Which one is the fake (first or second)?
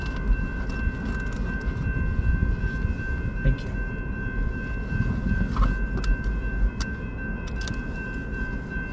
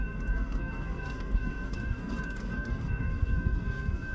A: second